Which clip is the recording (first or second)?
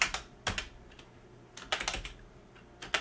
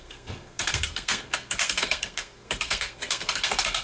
first